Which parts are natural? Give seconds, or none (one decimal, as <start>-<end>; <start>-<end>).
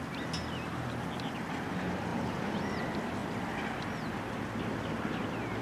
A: 0.0-2.1; 2.8-5.6